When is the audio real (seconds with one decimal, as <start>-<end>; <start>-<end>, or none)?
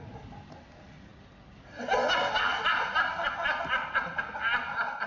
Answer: 0.0-5.1